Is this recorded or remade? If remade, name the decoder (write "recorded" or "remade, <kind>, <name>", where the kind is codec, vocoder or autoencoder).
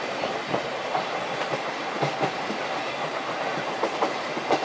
recorded